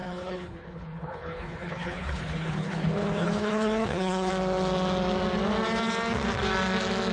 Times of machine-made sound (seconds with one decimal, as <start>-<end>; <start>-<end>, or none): 0.0-4.3